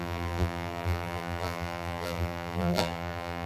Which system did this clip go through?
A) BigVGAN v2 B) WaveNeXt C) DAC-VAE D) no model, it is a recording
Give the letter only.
A